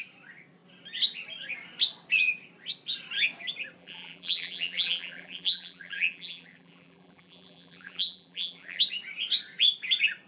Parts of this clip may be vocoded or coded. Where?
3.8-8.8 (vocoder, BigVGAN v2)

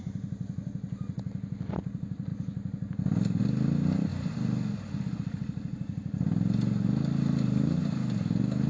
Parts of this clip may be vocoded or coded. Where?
none

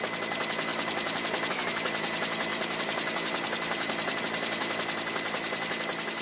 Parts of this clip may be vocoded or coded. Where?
0.7-1.5 (vocoder, BigVGAN v2); 2.5-4.2

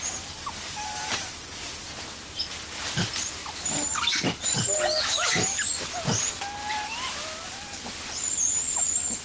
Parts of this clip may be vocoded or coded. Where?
3.4-4.2 (vocoder, BigVGAN v2); 6.6-7.4

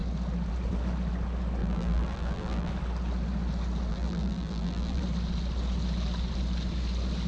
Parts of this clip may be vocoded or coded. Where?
1.6-2.7 (vocoder, BigVGAN v2); 3.9-5.0

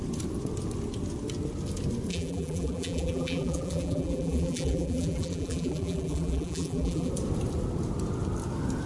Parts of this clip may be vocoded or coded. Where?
2.1-7.1 (vocoder, BigVGAN v2)

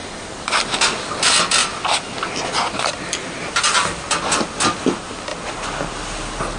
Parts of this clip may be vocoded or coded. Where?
0.0-0.5 (vocoder, BigVGAN v2)